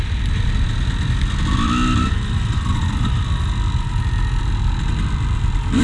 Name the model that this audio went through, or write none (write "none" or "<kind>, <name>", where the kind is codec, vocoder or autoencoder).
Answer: none